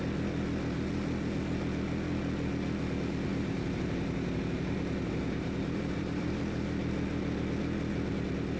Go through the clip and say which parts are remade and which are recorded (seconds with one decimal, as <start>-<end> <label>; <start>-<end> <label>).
0.0-3.3 recorded; 3.3-6.4 remade; 6.4-8.6 recorded